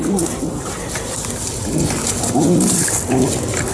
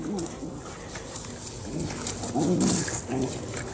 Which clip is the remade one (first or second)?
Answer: first